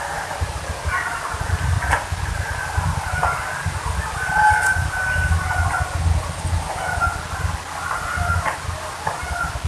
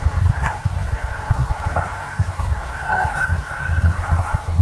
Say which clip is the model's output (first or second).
second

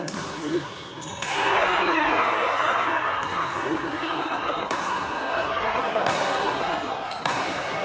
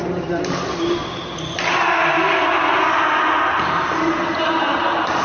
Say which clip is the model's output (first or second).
first